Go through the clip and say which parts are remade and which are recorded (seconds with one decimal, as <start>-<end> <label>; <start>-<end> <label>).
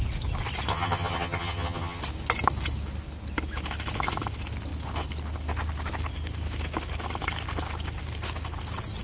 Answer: 0.0-0.7 recorded; 0.7-2.0 remade; 2.0-9.0 recorded